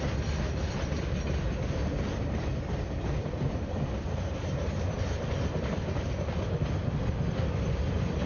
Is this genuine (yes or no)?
yes